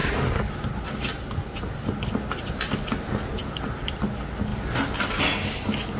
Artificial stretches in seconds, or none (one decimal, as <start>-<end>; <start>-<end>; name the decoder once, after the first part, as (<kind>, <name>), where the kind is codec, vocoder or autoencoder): 3.4-4.0 (vocoder, BigVGAN v2)